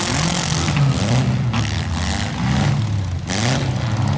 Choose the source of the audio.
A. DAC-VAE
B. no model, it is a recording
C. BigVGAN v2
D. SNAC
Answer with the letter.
B